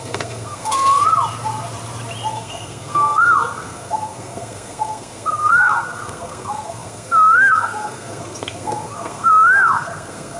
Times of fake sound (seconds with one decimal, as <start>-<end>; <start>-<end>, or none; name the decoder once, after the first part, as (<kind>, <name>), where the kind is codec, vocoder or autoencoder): 0.0-1.0 (codec, SNAC); 2.3-10.4